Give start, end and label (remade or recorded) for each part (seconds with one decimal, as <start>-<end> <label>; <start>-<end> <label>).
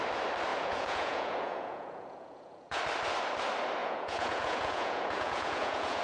0.0-0.5 recorded; 0.5-2.8 remade; 2.8-3.8 recorded; 3.8-6.0 remade